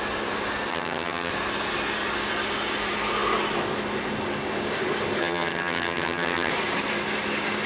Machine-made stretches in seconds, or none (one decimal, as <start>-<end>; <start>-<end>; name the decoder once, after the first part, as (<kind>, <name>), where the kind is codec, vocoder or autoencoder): 0.7-1.3 (vocoder, HiFi-GAN); 5.2-6.5